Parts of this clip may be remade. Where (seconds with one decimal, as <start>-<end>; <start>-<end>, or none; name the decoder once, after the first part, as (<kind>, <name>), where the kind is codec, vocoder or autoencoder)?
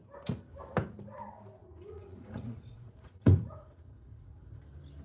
1.6-4.6 (vocoder, Vocos)